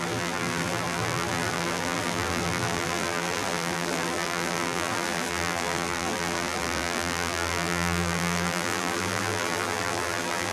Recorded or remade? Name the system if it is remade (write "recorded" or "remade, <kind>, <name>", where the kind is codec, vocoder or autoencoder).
remade, vocoder, BigVGAN v2